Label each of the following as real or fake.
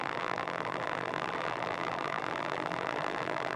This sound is fake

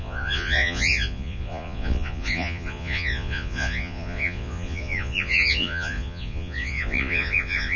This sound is fake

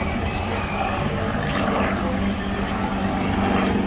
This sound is real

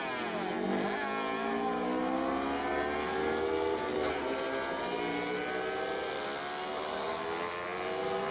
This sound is real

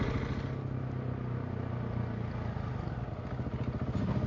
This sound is real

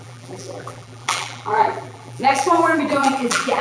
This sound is fake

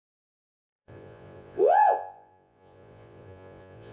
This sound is fake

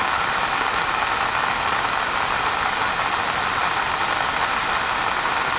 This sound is real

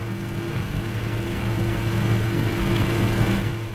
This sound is fake